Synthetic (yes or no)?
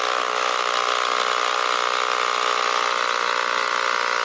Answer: no